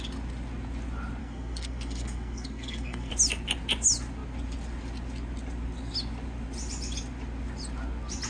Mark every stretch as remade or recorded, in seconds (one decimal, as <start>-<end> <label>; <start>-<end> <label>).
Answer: 0.0-1.2 recorded; 1.2-3.1 remade; 3.1-8.3 recorded